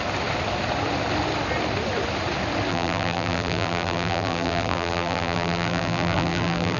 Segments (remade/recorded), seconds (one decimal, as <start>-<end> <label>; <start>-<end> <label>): 0.0-2.7 recorded; 2.7-6.8 remade